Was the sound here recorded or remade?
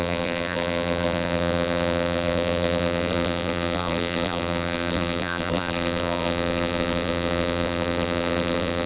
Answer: remade